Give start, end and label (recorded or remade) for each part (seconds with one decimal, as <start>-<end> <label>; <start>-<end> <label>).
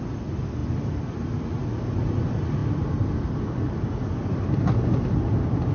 0.0-5.7 recorded